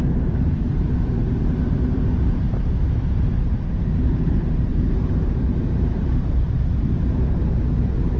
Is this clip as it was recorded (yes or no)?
no